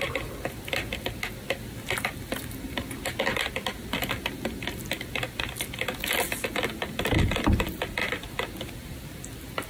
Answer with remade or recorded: recorded